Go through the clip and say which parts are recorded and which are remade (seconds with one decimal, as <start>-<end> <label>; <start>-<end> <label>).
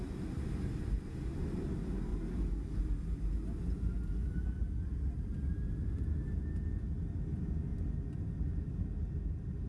0.0-9.7 recorded